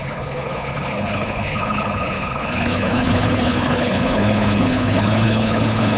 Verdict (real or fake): fake